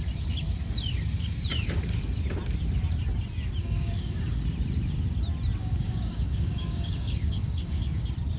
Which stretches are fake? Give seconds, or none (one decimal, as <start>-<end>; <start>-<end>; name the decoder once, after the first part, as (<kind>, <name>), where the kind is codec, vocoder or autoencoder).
3.6-4.4 (codec, DAC); 5.6-8.0